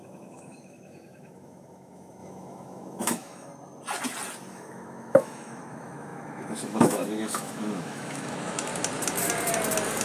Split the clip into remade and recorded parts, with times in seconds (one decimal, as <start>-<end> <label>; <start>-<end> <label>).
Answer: 0.0-3.5 remade; 3.5-4.5 recorded; 4.5-8.7 remade; 8.7-10.0 recorded